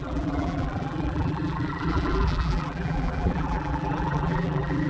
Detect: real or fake fake